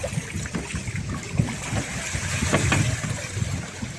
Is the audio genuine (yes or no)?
yes